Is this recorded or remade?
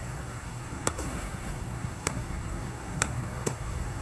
remade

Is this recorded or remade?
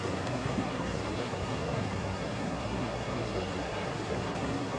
remade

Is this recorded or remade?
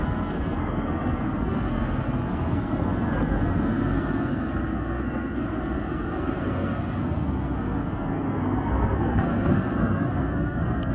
remade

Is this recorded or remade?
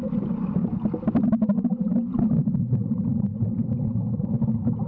recorded